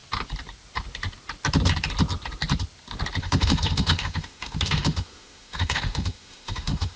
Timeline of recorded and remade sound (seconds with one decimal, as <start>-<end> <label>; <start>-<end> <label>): 0.0-3.2 recorded; 3.2-7.0 remade